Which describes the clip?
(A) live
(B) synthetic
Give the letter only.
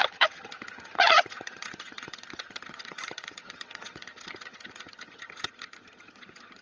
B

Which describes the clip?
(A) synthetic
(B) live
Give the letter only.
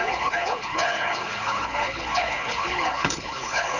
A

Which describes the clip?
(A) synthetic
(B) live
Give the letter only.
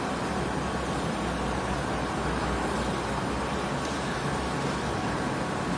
B